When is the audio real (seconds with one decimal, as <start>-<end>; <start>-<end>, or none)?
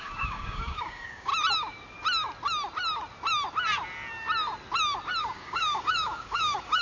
1.3-5.2